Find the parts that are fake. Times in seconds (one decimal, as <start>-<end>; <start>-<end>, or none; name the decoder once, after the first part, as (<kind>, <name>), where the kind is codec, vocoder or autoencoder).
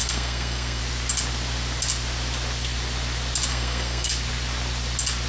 0.0-0.8 (codec, SNAC); 3.5-4.1